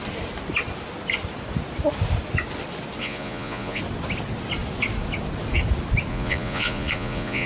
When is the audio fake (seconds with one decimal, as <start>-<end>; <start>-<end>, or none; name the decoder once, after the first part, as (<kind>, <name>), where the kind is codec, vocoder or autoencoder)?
3.0-3.8 (vocoder, Vocos); 6.1-7.5